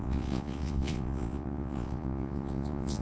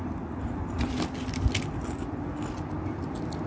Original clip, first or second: second